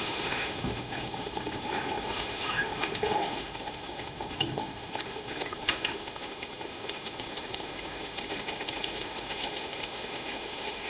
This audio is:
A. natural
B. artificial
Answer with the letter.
B